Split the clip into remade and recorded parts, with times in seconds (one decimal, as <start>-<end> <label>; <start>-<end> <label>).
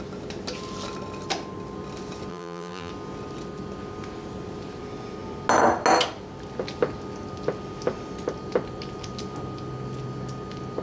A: 0.0-2.3 recorded; 2.3-2.9 remade; 2.9-10.8 recorded